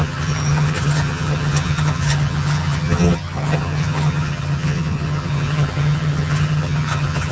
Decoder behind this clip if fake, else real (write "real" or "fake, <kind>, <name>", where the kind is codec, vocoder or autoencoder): fake, vocoder, HiFi-GAN